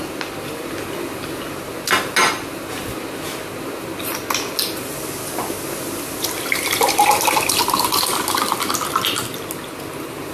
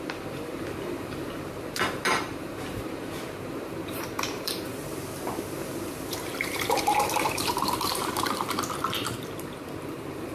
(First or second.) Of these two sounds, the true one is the first